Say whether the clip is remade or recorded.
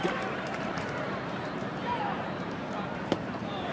remade